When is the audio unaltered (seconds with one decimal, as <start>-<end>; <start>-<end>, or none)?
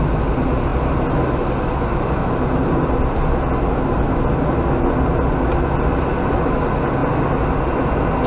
0.0-8.3